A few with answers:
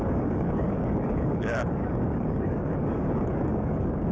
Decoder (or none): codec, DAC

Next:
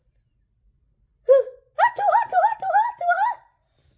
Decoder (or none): none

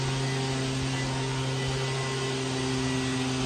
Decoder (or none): none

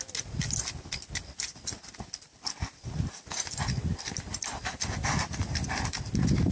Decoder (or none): none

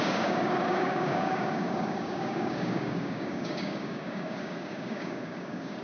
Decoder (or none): codec, DAC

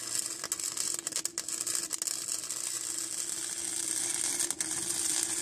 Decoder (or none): none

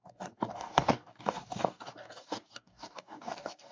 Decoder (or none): codec, DAC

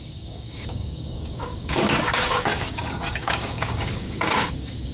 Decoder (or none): codec, DAC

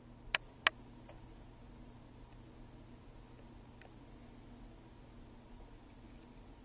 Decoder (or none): none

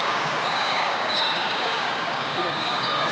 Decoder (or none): codec, DAC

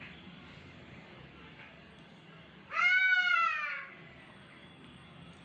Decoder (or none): codec, DAC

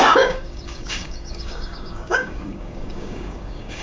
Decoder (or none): codec, DAC